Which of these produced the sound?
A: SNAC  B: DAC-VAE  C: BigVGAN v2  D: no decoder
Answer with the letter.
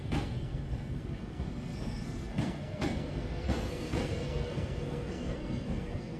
A